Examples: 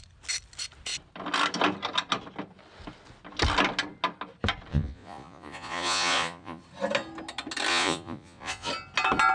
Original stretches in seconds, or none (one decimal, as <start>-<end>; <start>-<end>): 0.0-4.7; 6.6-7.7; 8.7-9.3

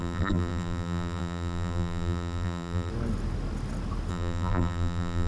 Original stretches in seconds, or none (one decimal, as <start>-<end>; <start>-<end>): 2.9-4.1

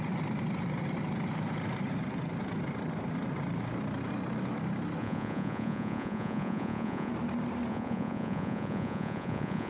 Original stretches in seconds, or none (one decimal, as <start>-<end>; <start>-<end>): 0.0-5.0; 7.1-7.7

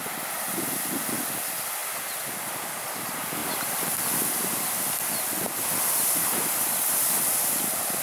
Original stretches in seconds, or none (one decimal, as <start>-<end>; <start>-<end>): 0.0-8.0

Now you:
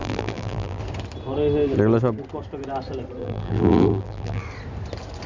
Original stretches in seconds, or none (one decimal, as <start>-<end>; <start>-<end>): 0.8-3.2; 4.4-5.3